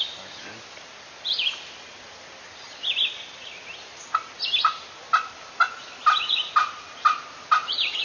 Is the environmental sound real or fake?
real